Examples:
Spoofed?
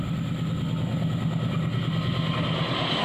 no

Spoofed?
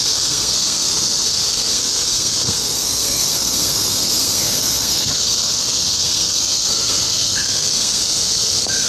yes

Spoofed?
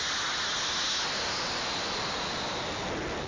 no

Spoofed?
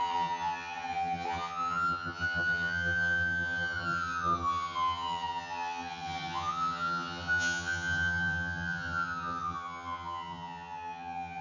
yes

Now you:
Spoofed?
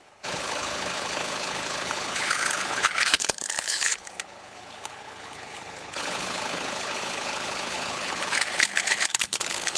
yes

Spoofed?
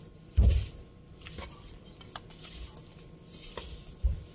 yes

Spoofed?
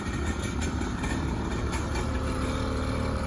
no